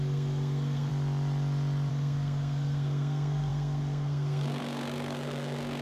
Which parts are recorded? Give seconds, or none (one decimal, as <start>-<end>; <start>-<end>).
0.9-1.9